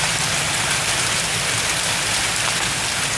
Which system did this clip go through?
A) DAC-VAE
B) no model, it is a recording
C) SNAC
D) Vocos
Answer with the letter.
B